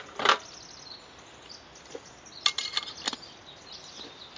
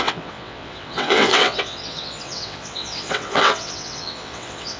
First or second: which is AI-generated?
second